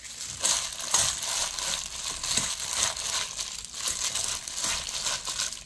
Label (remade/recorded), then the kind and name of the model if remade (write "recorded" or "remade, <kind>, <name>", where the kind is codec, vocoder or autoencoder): recorded